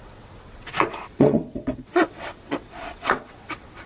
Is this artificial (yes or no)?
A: yes